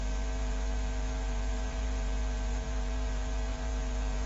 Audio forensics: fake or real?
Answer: fake